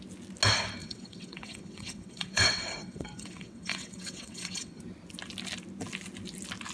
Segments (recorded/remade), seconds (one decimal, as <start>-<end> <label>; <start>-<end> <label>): 0.0-0.8 recorded; 0.8-4.8 remade; 4.8-6.7 recorded

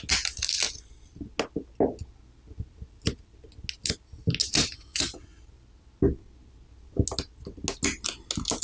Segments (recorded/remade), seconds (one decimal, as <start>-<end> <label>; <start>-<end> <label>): 0.0-4.4 recorded; 4.4-5.4 remade; 5.4-8.6 recorded

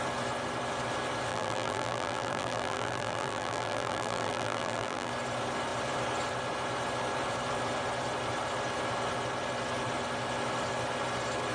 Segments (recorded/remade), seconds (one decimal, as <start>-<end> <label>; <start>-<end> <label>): 0.0-1.3 recorded; 1.3-5.1 remade; 5.1-11.5 recorded

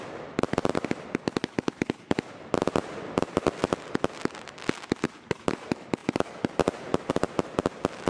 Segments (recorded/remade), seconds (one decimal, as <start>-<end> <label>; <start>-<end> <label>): 0.0-8.1 recorded

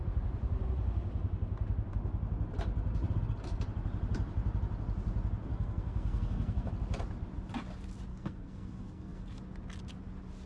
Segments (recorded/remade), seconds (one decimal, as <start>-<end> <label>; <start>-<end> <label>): 0.0-5.5 recorded; 5.5-6.7 remade; 6.7-8.1 recorded; 8.1-9.4 remade; 9.4-10.5 recorded

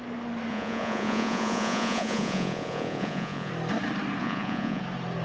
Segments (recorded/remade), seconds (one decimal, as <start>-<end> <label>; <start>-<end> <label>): 0.0-0.5 recorded; 0.5-3.5 remade; 3.5-4.2 recorded; 4.2-4.8 remade; 4.8-5.2 recorded